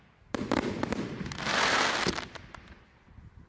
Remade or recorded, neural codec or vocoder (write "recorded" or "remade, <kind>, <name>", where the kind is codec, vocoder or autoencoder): remade, vocoder, BigVGAN v2